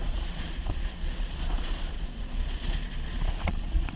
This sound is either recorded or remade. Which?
remade